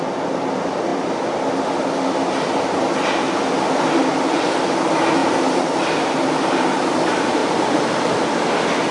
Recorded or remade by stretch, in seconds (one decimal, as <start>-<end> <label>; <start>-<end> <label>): 0.0-7.4 recorded; 7.4-8.3 remade; 8.3-8.9 recorded